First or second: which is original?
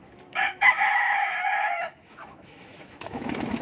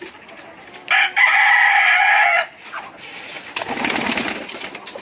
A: second